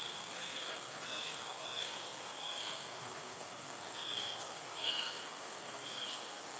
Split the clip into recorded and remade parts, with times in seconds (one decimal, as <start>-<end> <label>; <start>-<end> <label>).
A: 0.0-6.6 remade